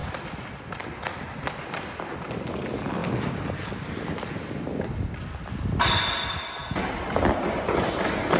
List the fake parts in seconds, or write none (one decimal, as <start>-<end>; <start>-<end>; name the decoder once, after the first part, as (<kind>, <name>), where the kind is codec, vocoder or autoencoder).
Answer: none